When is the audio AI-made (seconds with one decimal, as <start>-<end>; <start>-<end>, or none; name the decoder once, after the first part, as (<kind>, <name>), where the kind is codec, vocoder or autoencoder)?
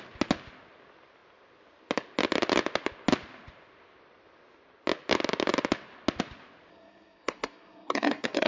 6.7-8.5 (codec, SNAC)